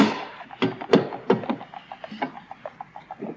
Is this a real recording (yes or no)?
yes